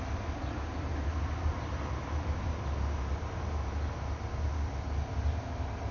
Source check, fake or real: real